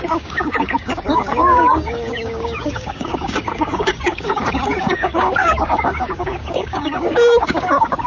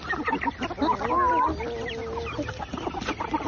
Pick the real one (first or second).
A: second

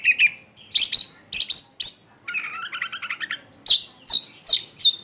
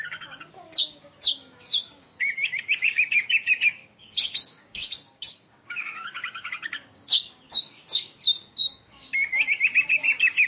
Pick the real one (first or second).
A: first